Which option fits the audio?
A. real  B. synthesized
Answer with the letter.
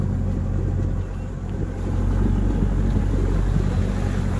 A